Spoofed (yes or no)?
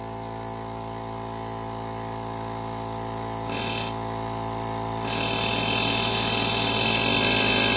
no